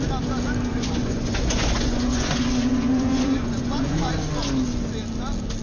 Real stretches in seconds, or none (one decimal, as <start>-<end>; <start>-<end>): 0.0-0.7; 4.1-5.6